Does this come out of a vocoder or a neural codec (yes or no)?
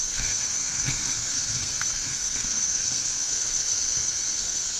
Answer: yes